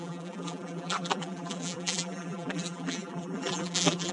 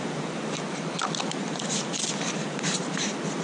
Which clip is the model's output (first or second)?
first